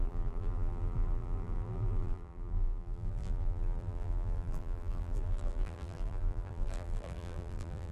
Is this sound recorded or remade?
remade